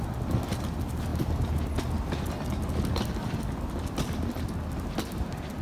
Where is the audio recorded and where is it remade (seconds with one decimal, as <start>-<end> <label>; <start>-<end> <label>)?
0.0-5.6 recorded